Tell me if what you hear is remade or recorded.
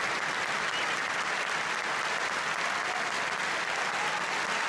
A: recorded